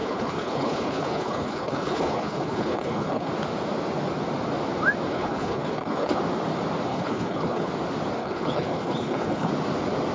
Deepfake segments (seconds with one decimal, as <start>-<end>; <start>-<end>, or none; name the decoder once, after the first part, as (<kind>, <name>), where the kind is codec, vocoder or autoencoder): 0.0-3.3 (codec, HILCodec); 5.1-6.2; 6.9-7.7; 8.2-9.5

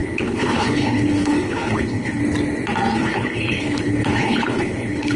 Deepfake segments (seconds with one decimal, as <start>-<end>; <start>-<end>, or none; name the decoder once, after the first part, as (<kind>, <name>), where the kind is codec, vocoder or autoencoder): 0.0-2.2 (codec, HILCodec); 3.0-5.2

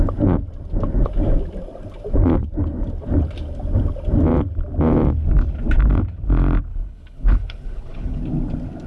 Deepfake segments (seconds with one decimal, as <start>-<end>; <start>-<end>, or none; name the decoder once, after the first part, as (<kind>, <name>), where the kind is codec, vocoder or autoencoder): 6.7-8.2 (codec, HILCodec)

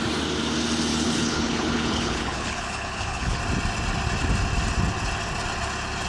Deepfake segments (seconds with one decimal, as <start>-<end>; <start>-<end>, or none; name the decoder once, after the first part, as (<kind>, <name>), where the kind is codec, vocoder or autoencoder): 0.9-3.4 (codec, HILCodec)

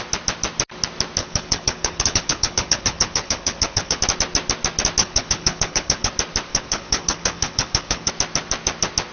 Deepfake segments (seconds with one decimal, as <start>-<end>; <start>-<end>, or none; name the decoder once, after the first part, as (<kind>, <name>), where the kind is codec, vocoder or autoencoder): 1.2-4.0 (codec, HILCodec); 5.0-6.1; 6.5-8.1

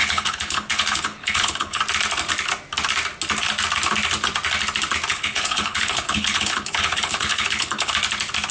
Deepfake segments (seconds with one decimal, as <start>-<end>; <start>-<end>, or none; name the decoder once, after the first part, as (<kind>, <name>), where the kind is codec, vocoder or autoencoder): 0.0-1.8 (codec, HILCodec); 5.1-7.9

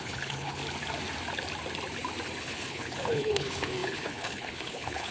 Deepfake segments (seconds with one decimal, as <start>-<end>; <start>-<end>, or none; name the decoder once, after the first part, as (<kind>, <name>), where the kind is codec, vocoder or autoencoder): 0.0-0.6 (codec, HILCodec); 2.4-5.1